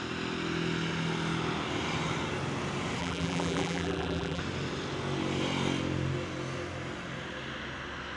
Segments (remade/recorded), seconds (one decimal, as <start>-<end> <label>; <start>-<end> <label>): 0.0-3.0 recorded; 3.0-4.4 remade; 4.4-8.2 recorded